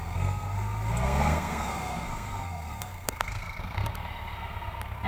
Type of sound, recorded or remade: remade